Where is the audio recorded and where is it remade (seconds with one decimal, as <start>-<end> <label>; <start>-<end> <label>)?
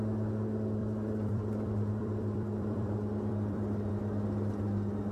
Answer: 0.0-0.8 recorded; 0.8-3.9 remade; 3.9-5.1 recorded